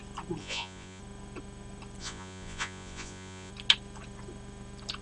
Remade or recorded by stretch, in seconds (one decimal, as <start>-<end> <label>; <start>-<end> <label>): 0.0-0.4 recorded; 0.4-1.0 remade; 1.0-2.0 recorded; 2.0-3.5 remade; 3.5-5.0 recorded